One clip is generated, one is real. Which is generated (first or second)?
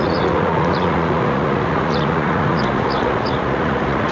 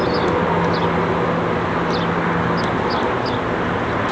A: first